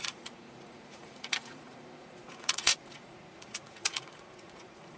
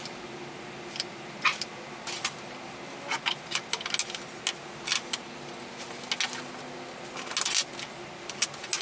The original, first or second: second